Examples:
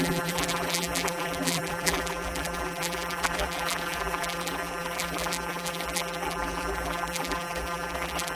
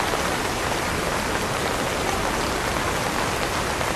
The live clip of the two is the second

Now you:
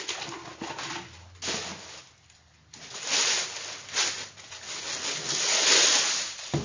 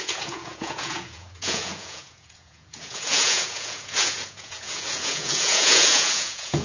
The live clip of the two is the first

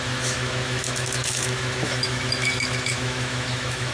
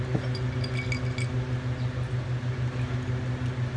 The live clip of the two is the second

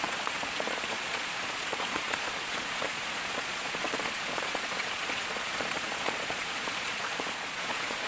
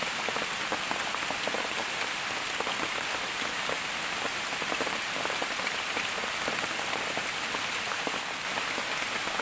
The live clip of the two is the second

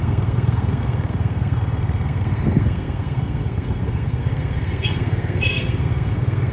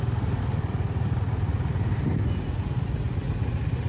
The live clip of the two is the second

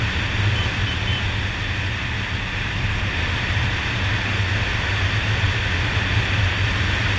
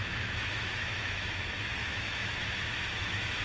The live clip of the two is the first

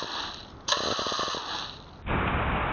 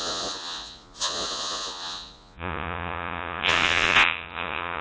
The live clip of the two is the first